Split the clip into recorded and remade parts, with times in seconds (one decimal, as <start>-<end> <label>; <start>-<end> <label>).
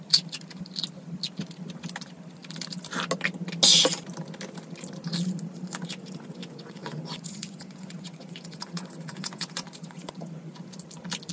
0.0-6.4 recorded; 6.4-10.7 remade; 10.7-11.3 recorded